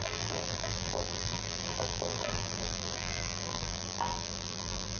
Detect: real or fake fake